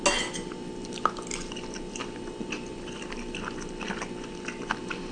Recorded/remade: recorded